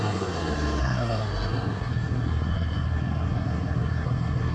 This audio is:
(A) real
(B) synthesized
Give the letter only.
B